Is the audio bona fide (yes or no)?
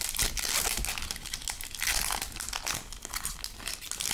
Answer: yes